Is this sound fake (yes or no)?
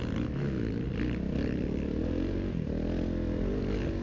no